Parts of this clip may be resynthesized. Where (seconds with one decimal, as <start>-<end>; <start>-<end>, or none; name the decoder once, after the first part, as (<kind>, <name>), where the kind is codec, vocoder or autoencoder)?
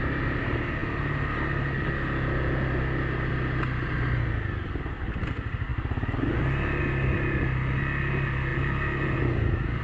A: none